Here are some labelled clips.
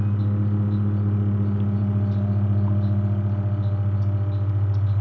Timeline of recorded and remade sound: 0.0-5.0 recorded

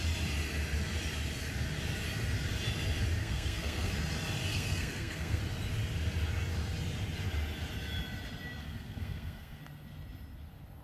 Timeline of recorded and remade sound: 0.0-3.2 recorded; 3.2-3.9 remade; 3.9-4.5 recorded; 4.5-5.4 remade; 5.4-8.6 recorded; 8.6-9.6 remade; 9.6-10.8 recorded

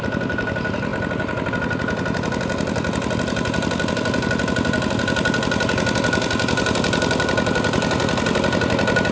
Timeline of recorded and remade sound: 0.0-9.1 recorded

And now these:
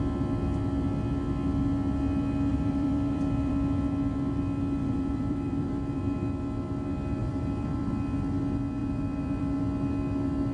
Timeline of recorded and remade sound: 0.0-2.5 recorded; 2.5-3.5 remade; 3.5-4.8 recorded; 4.8-6.0 remade; 6.0-7.2 recorded; 7.2-7.9 remade; 7.9-8.8 recorded; 8.8-9.4 remade; 9.4-10.5 recorded

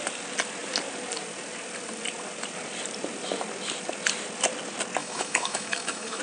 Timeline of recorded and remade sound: 0.0-5.0 recorded; 5.0-6.2 remade

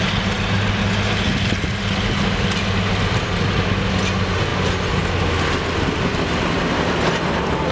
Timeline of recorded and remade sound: 0.0-7.7 recorded

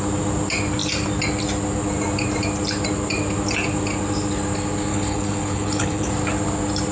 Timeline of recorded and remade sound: 0.0-4.9 recorded; 4.9-6.1 remade; 6.1-6.9 recorded

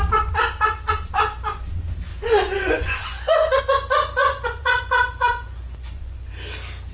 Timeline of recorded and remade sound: 0.0-2.1 recorded; 2.1-3.6 remade; 3.6-4.2 recorded; 4.2-6.3 remade; 6.3-6.9 recorded